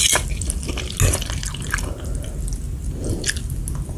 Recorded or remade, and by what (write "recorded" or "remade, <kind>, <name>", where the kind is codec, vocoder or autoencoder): recorded